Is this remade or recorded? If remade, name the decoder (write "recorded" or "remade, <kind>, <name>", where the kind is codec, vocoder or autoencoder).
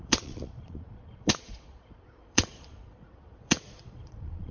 remade, vocoder, Vocos